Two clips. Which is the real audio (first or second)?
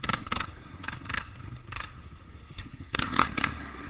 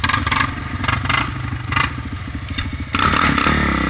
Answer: second